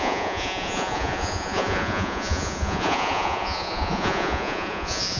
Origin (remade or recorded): remade